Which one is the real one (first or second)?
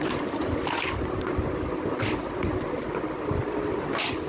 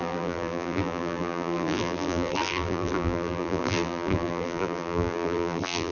first